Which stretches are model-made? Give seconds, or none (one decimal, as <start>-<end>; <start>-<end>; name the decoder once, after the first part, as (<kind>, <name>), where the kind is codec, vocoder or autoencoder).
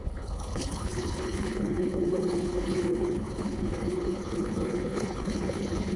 0.0-6.0 (codec, HILCodec)